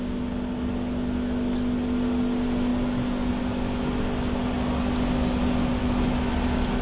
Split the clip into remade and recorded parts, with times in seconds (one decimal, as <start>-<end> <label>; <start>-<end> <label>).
0.0-5.8 recorded; 5.8-6.3 remade; 6.3-6.8 recorded